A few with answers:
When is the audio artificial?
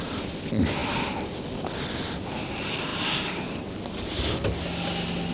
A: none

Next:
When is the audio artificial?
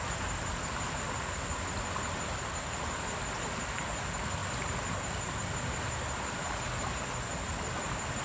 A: none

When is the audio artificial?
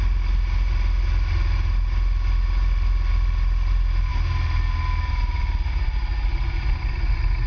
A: none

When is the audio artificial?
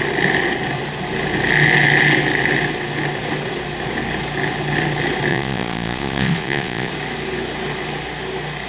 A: 5.3-6.9 (vocoder, Vocos)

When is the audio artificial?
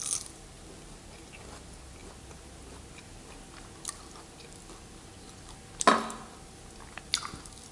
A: none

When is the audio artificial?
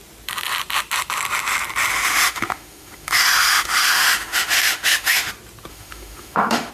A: 1.9-5.3 (autoencoder, DAC-VAE); 5.7-6.7